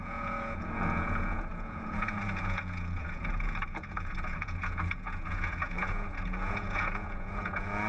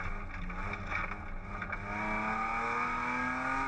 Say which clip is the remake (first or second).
first